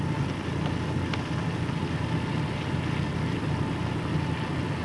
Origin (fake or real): real